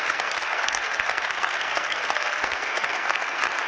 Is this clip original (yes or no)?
no